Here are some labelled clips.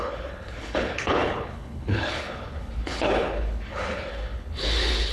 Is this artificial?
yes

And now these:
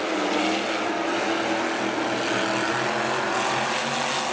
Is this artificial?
no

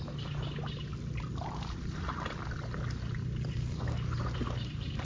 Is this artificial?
no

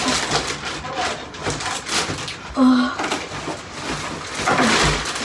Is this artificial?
no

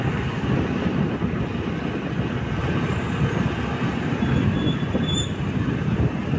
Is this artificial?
no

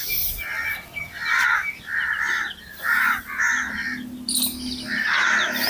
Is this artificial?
no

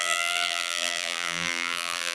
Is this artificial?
yes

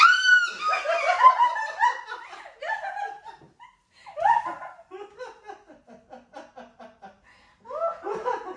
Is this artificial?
no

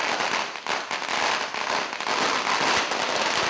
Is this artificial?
no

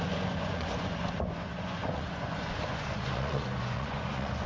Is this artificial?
yes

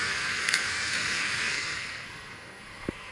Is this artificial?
yes